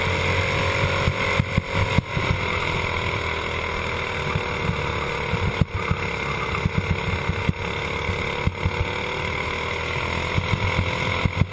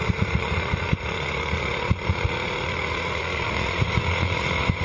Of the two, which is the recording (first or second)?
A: first